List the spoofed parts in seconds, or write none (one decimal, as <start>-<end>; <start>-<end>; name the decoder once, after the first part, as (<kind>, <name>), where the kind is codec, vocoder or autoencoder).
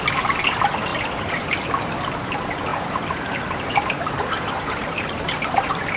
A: 2.7-6.0 (vocoder, BigVGAN v2)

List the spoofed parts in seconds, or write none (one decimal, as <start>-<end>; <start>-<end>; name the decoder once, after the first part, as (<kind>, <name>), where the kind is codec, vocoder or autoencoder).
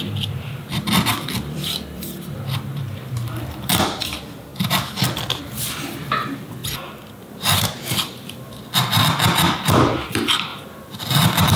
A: 0.0-4.5 (vocoder, BigVGAN v2); 5.7-6.6; 7.2-10.5; 11.2-11.6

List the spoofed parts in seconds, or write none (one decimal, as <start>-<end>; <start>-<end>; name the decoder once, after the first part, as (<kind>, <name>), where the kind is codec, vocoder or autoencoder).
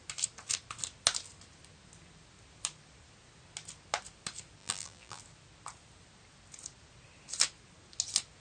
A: 4.6-5.2 (vocoder, BigVGAN v2)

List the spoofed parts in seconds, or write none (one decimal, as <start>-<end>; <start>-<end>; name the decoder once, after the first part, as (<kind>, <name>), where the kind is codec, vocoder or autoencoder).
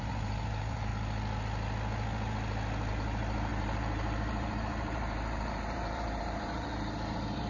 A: 0.0-0.9 (vocoder, BigVGAN v2); 2.9-7.5